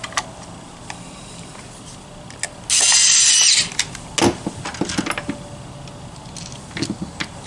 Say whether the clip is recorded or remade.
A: recorded